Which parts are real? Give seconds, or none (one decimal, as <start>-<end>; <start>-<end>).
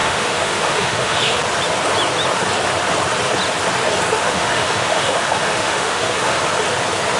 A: 1.4-4.1; 6.4-7.2